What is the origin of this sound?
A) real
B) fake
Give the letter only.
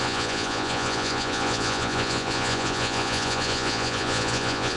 B